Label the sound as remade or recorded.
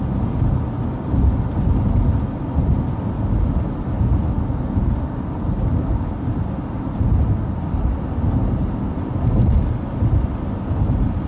recorded